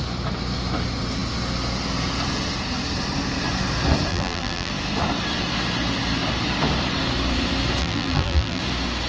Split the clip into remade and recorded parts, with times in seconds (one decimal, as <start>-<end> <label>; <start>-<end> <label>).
0.0-4.1 recorded; 4.1-4.7 remade; 4.7-7.8 recorded; 7.8-8.6 remade; 8.6-9.1 recorded